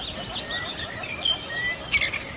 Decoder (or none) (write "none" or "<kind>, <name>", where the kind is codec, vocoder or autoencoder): none